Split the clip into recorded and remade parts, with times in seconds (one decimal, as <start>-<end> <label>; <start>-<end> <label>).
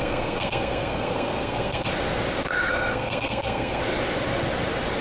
0.0-1.9 remade; 1.9-2.7 recorded; 2.7-3.8 remade; 3.8-5.0 recorded